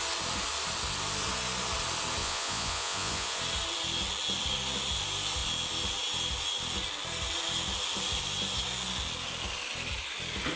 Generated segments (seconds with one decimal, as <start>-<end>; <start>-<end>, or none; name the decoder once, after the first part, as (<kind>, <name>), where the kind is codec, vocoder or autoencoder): 2.2-3.4 (vocoder, Vocos)